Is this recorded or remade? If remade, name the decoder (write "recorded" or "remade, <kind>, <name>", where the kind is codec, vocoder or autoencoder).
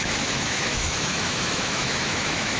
remade, autoencoder, DAC-VAE